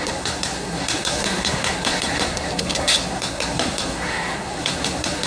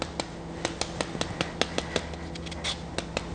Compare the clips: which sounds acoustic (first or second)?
second